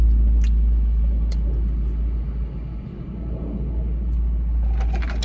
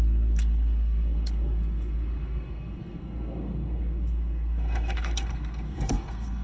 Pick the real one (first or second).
first